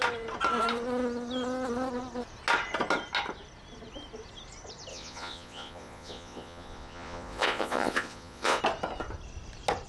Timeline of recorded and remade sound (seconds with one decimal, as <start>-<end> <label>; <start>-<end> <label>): 0.0-4.9 recorded; 4.9-8.6 remade; 8.6-9.9 recorded